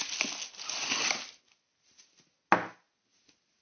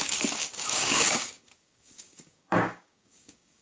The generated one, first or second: second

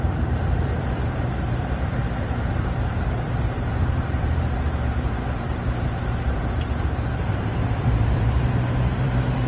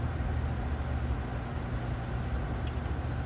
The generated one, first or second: first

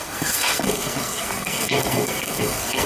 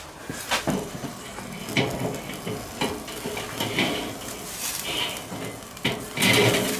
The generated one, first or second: first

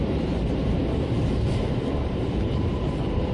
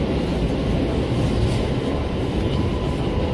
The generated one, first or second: first